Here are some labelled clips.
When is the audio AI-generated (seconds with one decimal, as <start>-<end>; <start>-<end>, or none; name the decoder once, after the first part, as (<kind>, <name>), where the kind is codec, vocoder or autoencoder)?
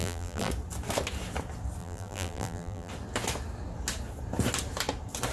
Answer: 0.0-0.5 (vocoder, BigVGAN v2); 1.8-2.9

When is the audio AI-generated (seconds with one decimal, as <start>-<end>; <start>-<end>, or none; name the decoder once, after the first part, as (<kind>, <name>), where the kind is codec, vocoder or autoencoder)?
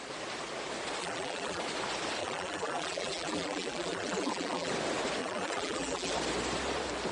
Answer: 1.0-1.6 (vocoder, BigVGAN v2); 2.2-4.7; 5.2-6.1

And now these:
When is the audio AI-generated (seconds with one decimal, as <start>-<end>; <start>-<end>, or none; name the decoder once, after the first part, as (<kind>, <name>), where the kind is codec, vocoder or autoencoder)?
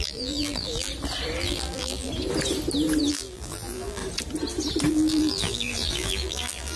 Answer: 0.0-0.9 (vocoder, BigVGAN v2); 1.4-2.1; 3.1-4.0; 4.9-6.8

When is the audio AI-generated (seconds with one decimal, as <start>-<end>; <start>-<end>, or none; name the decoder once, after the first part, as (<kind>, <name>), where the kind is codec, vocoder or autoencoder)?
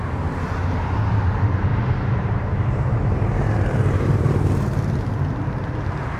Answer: 1.7-5.1 (vocoder, BigVGAN v2)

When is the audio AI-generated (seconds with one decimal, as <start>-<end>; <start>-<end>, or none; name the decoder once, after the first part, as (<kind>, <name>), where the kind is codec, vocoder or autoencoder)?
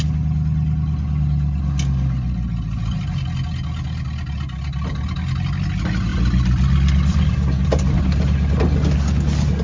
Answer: 6.1-8.0 (vocoder, BigVGAN v2)